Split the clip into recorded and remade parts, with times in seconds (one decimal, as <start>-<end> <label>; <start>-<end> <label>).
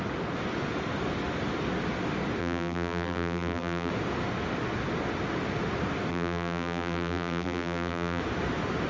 0.0-2.4 recorded; 2.4-3.9 remade; 3.9-6.1 recorded; 6.1-8.2 remade; 8.2-8.9 recorded